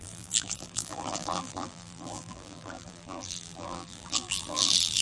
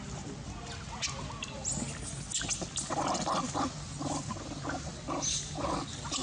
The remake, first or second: first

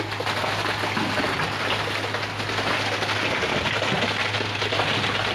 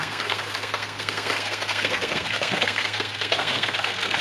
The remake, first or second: second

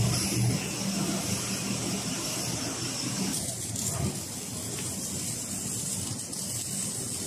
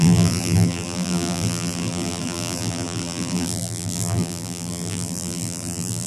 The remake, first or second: second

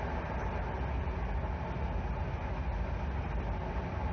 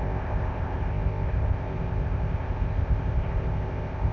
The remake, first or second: second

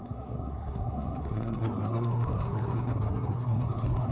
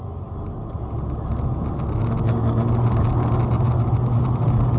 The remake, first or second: first